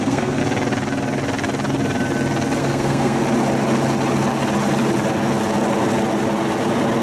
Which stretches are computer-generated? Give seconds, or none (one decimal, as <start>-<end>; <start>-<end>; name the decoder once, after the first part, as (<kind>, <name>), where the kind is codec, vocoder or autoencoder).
0.0-0.4 (codec, SNAC); 2.6-3.2